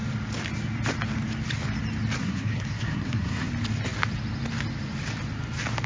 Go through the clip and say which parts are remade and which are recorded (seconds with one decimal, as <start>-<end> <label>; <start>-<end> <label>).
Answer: 0.0-2.2 recorded; 2.2-3.5 remade; 3.5-5.9 recorded